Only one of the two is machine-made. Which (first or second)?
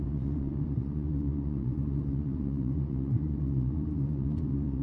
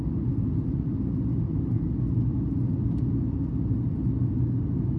first